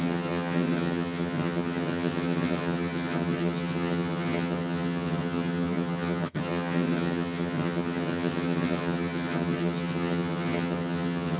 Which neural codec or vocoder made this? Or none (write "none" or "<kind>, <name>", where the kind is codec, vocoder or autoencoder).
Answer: vocoder, HiFi-GAN